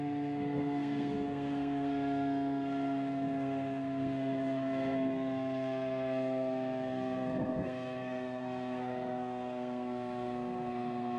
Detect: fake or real fake